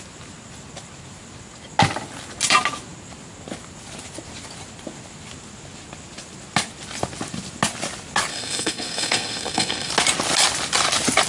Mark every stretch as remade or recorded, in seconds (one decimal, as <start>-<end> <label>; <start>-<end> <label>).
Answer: 0.0-8.3 recorded; 8.3-9.9 remade; 9.9-11.3 recorded